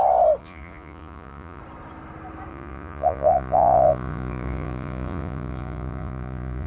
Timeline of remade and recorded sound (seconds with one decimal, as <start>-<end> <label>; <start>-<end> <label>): 0.0-0.4 recorded; 0.4-1.6 remade; 1.6-2.5 recorded; 2.5-6.7 remade

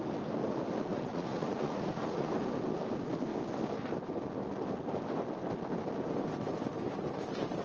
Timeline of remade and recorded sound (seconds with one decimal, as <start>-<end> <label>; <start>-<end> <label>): 0.0-0.9 recorded; 0.9-2.3 remade; 2.3-7.6 recorded